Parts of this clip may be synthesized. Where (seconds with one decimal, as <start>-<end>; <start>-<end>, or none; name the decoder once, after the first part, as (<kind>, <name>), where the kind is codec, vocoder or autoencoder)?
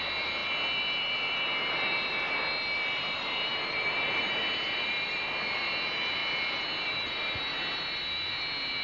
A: none